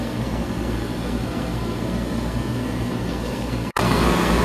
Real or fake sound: fake